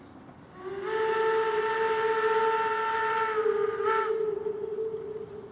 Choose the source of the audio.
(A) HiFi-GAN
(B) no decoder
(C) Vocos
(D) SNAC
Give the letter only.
B